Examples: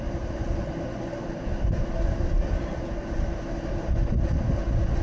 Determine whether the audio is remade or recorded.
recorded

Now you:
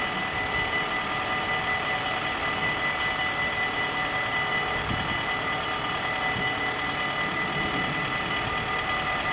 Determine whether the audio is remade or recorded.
recorded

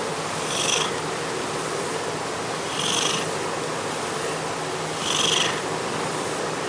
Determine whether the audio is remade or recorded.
recorded